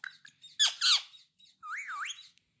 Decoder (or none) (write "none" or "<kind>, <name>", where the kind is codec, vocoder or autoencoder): none